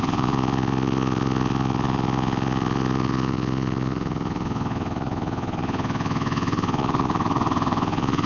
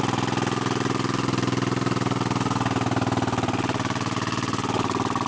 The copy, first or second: first